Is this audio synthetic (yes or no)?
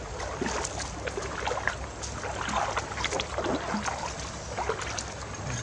no